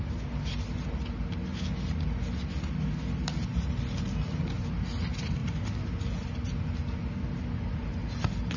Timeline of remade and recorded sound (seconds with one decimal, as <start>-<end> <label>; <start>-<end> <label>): 0.0-8.6 recorded